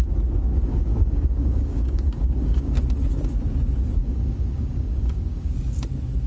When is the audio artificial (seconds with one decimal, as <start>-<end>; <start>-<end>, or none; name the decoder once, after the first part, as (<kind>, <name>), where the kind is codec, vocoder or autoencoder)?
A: 0.5-2.8 (codec, DAC); 4.0-5.5